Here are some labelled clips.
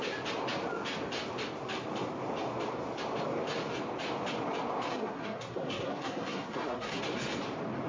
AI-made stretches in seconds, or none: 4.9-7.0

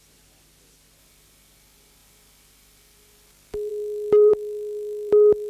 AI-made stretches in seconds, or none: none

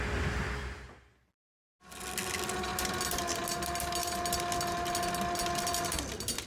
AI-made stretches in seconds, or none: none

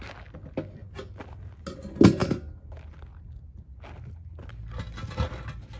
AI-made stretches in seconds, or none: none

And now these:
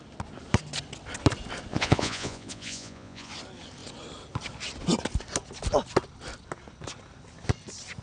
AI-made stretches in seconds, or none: 1.7-3.3